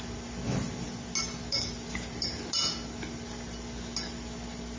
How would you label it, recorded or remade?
recorded